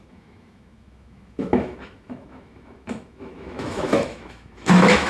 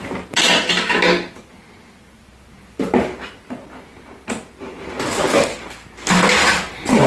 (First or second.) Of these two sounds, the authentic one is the second